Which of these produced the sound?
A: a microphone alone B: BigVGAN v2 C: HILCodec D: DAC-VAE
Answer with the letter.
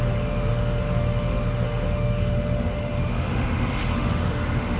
D